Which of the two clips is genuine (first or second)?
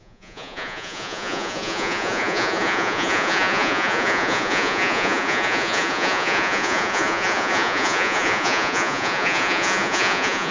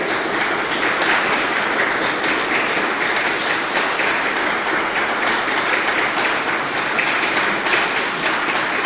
second